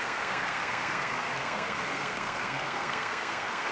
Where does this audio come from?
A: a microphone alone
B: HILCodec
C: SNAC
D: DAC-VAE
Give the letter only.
C